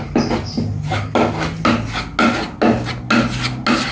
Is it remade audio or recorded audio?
recorded